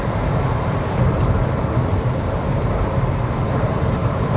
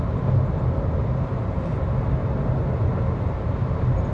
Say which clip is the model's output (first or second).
first